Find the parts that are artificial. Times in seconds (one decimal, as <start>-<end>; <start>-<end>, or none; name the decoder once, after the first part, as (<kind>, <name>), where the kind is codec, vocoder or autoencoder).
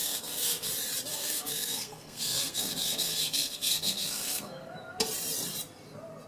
0.0-0.7 (codec, SNAC); 1.1-4.7